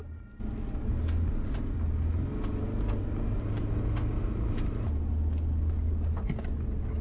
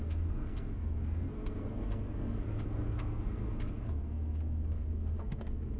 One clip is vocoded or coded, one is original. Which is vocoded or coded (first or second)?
second